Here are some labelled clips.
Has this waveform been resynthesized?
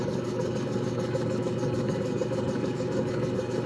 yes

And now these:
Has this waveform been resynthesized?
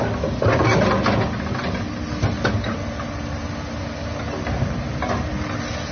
no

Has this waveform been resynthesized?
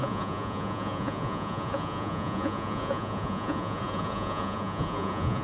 yes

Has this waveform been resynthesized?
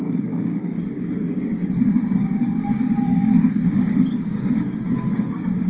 yes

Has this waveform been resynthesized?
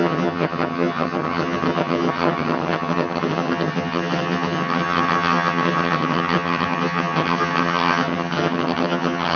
yes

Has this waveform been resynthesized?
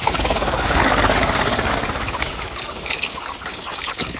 yes